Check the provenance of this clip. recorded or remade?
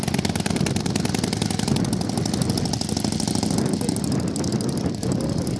recorded